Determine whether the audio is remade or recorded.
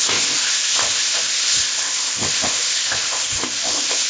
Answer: remade